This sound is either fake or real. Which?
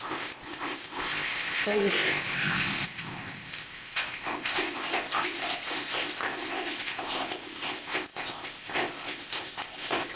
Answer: fake